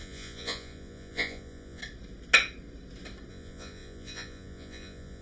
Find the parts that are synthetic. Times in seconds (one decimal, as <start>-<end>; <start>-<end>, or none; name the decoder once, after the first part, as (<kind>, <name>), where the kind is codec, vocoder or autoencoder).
0.0-1.8 (vocoder, Vocos); 3.3-5.2